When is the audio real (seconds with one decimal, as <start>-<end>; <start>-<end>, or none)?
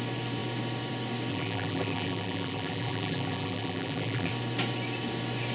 0.0-1.3; 4.3-5.5